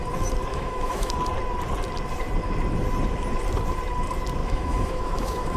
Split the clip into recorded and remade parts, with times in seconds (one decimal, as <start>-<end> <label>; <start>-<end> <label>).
0.0-0.5 recorded; 0.5-1.1 remade; 1.1-4.4 recorded; 4.4-5.6 remade